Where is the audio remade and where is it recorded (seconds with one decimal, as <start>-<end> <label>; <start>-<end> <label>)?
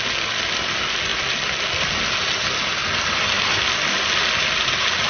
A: 0.0-5.1 recorded